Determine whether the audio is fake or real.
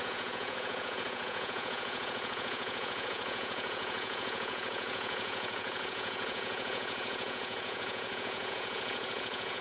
fake